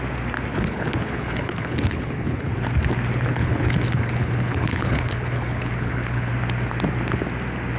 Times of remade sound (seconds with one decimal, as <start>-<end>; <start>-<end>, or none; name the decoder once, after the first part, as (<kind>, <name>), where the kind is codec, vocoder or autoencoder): 0.5-2.5 (codec, HILCodec); 3.3-6.3